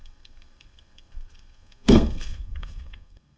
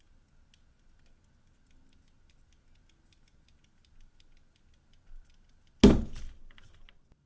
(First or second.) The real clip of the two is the second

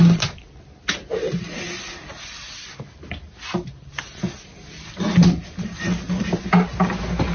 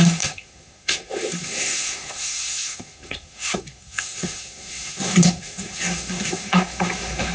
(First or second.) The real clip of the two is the first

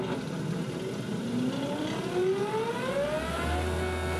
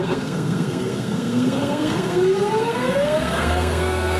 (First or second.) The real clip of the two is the first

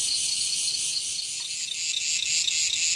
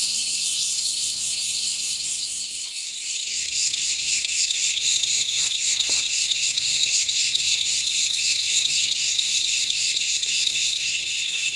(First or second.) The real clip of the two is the first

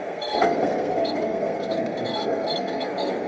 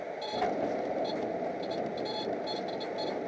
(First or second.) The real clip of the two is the second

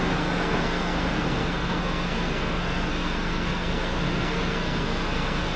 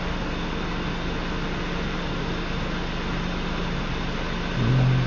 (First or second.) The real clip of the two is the second